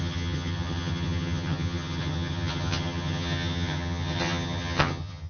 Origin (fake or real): fake